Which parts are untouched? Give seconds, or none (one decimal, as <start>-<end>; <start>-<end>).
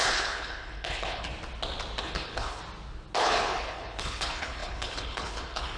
1.3-2.0; 2.6-3.2